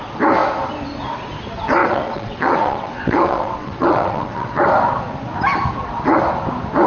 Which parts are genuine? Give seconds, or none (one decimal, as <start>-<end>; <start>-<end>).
0.0-1.8; 4.6-6.9